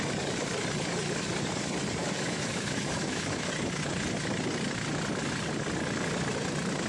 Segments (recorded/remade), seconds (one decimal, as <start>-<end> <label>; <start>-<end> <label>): 0.0-2.0 recorded; 2.0-3.5 remade; 3.5-6.9 recorded